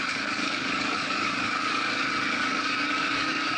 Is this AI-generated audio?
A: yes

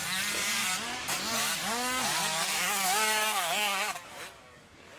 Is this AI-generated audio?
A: yes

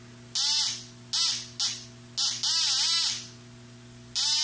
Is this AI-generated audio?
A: no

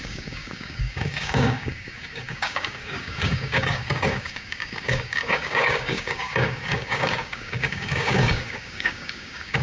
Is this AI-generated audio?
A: yes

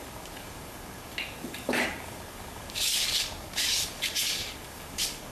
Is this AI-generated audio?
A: yes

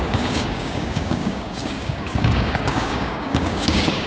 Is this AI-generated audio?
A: yes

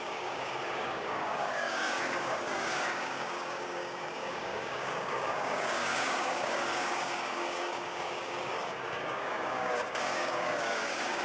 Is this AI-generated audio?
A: yes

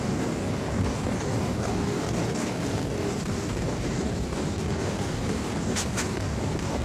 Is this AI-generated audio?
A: yes